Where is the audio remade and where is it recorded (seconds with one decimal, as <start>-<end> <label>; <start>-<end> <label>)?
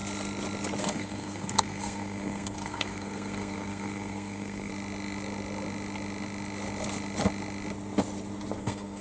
0.0-0.8 recorded; 0.8-4.7 remade; 4.7-8.6 recorded; 8.6-9.0 remade